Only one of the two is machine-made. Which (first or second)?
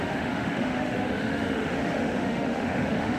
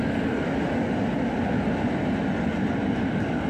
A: first